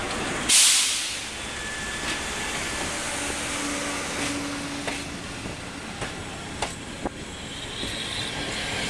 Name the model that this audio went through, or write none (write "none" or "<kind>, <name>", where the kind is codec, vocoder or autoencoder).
none